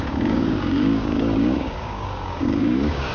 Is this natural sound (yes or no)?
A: no